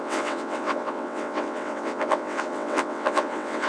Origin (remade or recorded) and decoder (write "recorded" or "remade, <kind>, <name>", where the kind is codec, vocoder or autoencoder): remade, vocoder, WaveNeXt